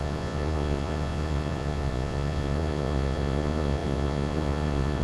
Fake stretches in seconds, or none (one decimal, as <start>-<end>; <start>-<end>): 0.0-5.0

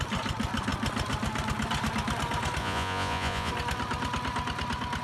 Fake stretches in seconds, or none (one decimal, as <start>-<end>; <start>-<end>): 2.6-3.5

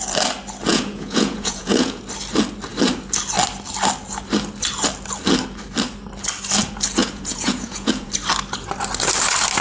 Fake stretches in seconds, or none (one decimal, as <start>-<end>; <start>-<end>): 0.7-2.0; 7.0-8.1

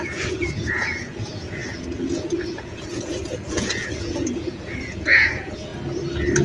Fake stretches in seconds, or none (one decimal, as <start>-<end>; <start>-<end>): 0.0-5.7

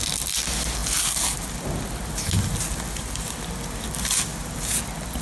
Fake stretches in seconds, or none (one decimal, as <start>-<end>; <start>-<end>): none

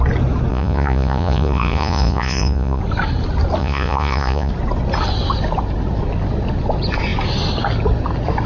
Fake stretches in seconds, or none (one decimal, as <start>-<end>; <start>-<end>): 0.5-2.8; 3.6-4.5